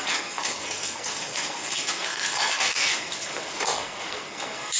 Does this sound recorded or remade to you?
remade